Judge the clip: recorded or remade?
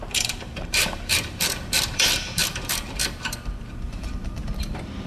remade